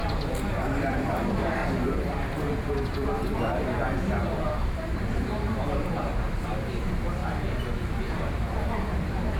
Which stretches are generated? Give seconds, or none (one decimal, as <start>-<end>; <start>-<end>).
0.6-1.6; 2.5-7.2; 8.2-9.4